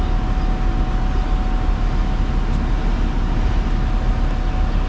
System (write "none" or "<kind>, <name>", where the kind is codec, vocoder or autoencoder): none